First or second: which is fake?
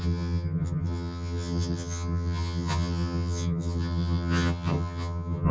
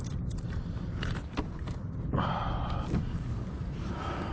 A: first